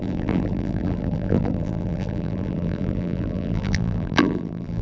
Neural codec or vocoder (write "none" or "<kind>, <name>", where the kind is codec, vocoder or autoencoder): vocoder, BigVGAN v2